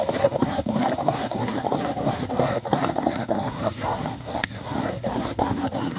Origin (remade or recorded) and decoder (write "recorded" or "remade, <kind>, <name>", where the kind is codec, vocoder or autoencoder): remade, codec, SNAC